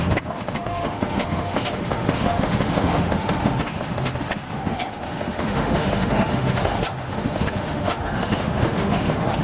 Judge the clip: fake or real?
fake